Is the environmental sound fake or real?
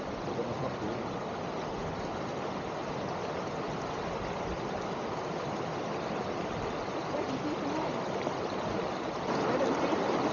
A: real